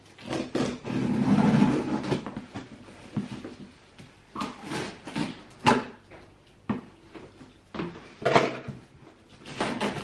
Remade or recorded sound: recorded